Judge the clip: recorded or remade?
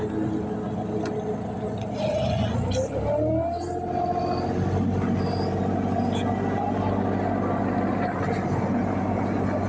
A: recorded